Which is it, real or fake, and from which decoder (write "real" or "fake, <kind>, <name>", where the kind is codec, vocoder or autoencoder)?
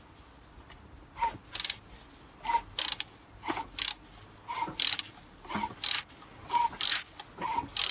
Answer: real